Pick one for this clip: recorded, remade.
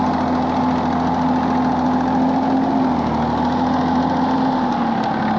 recorded